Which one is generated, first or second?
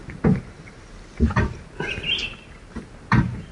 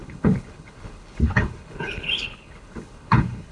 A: second